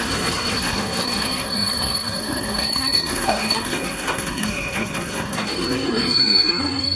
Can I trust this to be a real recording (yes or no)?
no